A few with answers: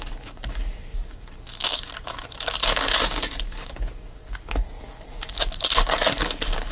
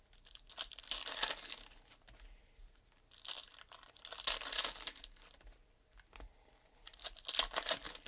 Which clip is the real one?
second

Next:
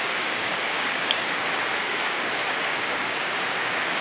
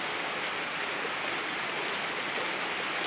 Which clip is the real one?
second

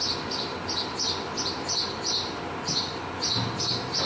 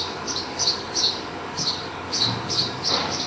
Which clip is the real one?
first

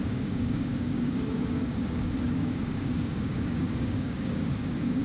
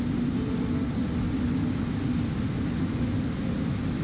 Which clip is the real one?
second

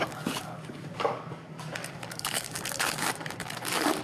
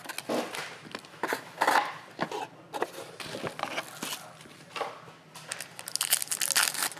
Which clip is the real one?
second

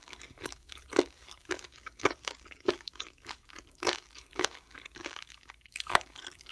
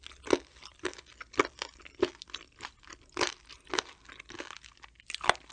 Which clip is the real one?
second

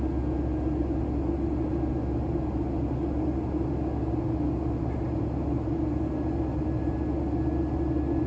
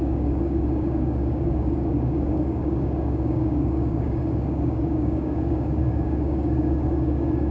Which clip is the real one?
first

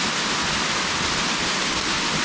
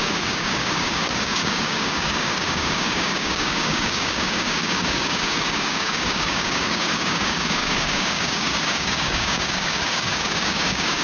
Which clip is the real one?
first